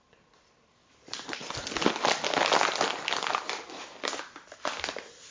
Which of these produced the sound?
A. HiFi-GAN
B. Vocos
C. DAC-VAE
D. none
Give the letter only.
D